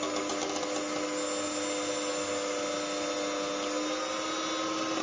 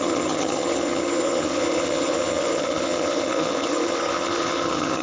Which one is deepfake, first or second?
second